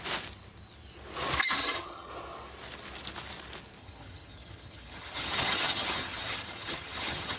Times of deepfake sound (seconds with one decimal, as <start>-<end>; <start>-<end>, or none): 1.6-2.1; 3.8-7.4